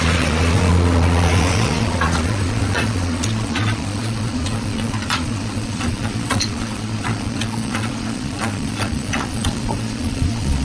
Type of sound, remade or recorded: remade